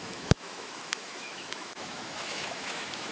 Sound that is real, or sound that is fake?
fake